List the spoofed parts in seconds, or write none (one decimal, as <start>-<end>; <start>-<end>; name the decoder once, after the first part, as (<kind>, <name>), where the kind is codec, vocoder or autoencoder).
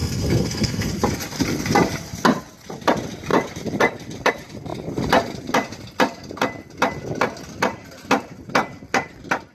0.0-0.9 (codec, SNAC)